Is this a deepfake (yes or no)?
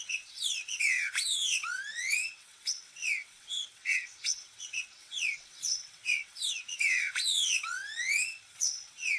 yes